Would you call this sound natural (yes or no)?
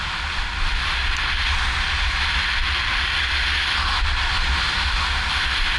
yes